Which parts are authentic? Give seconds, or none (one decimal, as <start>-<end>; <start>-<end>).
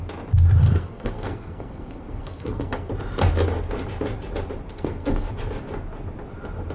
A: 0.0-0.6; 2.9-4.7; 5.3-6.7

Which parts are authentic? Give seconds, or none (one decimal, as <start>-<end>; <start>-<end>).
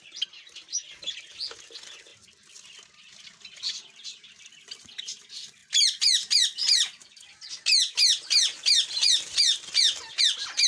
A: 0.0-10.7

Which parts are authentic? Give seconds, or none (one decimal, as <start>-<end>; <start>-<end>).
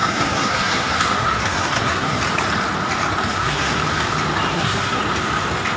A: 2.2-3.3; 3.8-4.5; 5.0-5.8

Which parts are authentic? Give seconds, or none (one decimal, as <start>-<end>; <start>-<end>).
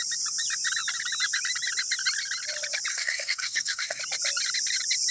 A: 0.0-2.9; 4.0-5.1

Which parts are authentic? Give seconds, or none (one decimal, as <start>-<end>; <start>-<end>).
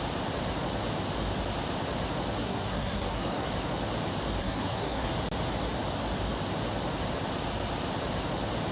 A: 0.0-2.4; 3.5-4.4; 5.1-8.7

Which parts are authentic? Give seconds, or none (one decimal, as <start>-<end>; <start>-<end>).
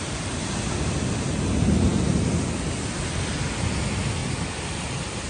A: 0.0-5.3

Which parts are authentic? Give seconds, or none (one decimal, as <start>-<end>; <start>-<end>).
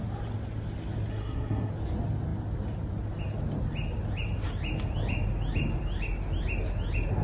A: 0.0-1.1; 1.7-7.2